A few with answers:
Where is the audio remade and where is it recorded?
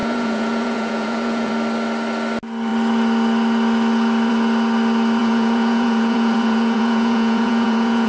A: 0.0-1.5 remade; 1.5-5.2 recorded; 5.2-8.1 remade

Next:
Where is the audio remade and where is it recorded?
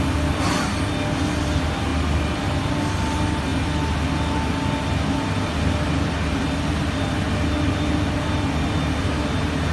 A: 0.0-9.7 recorded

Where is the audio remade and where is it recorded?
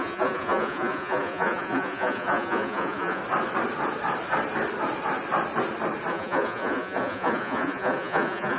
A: 0.0-3.2 remade; 3.2-6.1 recorded; 6.1-8.6 remade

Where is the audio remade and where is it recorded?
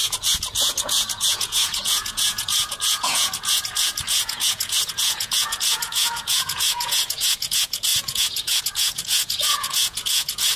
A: 0.0-10.6 remade